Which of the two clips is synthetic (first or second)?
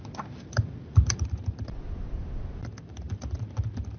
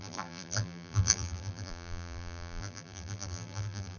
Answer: second